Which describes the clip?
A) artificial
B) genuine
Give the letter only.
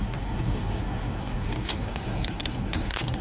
A